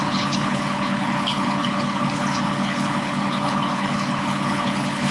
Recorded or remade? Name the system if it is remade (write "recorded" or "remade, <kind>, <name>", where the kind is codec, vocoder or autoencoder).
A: remade, codec, HILCodec